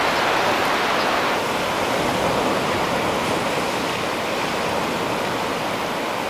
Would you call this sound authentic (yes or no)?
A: yes